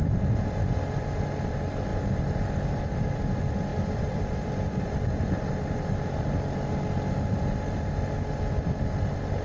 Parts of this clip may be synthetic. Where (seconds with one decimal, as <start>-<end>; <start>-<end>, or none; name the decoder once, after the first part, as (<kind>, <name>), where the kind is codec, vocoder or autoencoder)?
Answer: 3.7-5.0 (vocoder, BigVGAN v2)